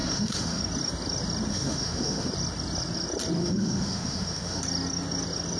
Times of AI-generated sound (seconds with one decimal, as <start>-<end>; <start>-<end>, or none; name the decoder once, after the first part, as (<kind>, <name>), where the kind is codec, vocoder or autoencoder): 0.0-0.6 (autoencoder, DAC-VAE); 1.5-2.3; 3.4-4.6